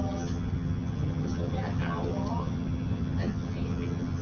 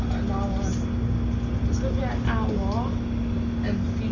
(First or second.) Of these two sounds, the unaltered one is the second